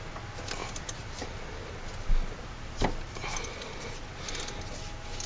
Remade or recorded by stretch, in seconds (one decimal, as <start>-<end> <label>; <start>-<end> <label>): 0.0-5.3 recorded